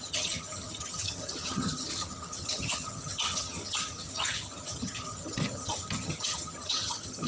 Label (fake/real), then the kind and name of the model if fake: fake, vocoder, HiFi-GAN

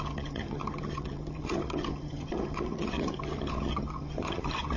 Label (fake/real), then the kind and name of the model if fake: fake, vocoder, HiFi-GAN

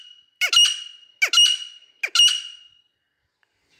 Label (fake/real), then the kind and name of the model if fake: real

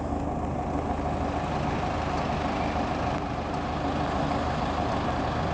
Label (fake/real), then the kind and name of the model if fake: real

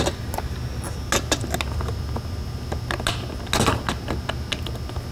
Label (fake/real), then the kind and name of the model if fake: real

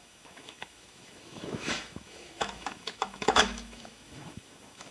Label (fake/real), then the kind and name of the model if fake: fake, autoencoder, DAC-VAE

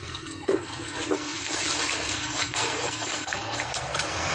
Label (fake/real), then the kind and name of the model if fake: fake, codec, SNAC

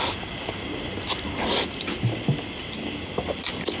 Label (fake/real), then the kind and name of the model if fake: real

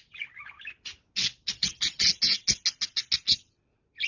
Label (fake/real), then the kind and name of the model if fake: real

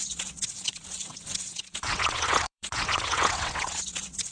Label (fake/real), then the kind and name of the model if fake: fake, vocoder, WaveNeXt